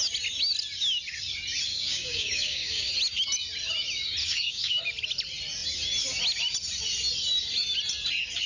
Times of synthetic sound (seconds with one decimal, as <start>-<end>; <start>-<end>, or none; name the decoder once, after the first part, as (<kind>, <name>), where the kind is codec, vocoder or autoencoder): 1.7-2.9 (codec, DAC); 4.2-4.8